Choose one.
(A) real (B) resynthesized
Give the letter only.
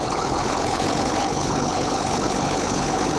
B